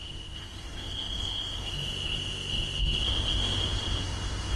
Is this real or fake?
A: fake